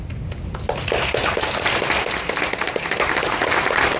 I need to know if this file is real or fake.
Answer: real